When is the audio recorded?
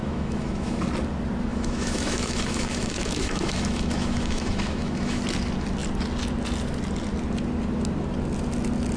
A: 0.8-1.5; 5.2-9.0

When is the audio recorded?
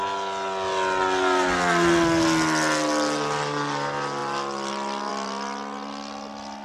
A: 0.0-6.6